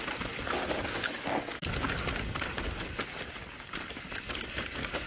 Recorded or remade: recorded